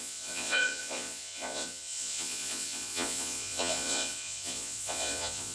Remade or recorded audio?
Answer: remade